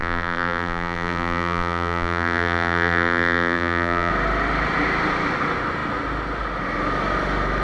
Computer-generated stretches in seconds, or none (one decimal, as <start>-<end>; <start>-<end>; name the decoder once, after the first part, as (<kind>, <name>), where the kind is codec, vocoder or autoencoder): 0.0-4.1 (vocoder, BigVGAN v2)